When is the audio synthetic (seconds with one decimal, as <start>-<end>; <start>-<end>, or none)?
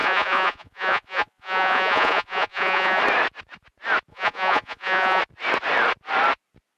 0.0-3.0; 4.1-5.2